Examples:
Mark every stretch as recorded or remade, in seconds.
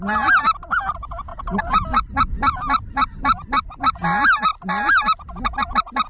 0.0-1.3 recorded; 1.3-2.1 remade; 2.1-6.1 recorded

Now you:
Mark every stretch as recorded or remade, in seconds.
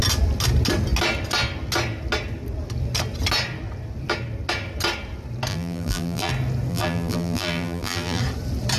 0.0-5.5 recorded; 5.5-6.3 remade; 6.3-6.7 recorded; 6.7-8.2 remade; 8.2-8.8 recorded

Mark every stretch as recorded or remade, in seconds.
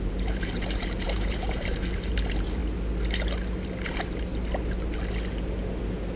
0.0-2.6 remade; 2.6-3.9 recorded; 3.9-4.3 remade; 4.3-6.2 recorded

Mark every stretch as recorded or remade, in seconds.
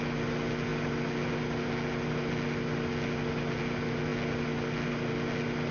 0.0-5.7 recorded